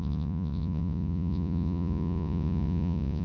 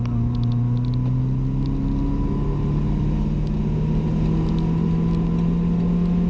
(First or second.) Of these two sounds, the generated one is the first